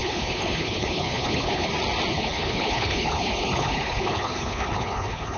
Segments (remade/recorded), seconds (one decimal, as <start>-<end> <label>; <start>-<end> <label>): 0.0-1.7 remade; 1.7-2.1 recorded; 2.1-5.4 remade